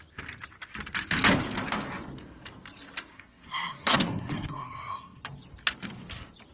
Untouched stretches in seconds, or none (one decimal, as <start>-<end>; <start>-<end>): 0.0-3.1; 5.2-6.5

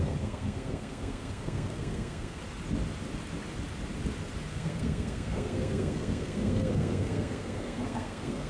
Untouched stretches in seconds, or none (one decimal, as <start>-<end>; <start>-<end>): 2.4-4.5

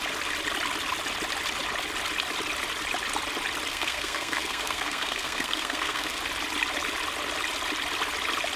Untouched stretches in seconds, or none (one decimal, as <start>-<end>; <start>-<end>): 0.0-3.7; 6.2-8.6

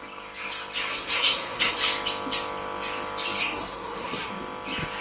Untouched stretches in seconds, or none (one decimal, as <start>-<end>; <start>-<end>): 0.0-0.9; 1.8-3.4; 4.3-5.0

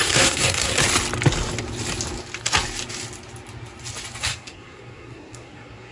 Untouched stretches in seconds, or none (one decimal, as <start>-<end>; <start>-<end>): 0.7-4.2

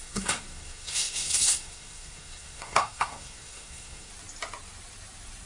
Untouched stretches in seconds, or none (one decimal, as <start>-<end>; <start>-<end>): 4.1-5.5

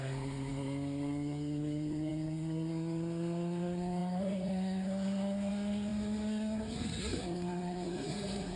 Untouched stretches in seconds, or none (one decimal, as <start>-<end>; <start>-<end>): none